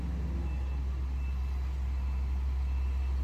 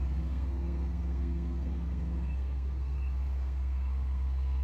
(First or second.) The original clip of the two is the first